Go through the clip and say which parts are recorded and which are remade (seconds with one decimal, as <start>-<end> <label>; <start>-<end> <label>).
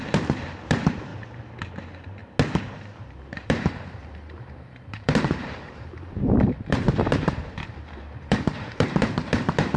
0.0-1.1 remade; 1.1-1.8 recorded; 1.8-2.2 remade; 2.2-3.0 recorded; 3.0-9.8 remade